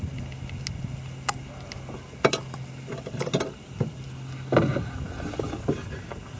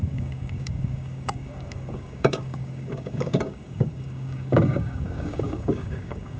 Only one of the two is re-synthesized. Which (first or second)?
second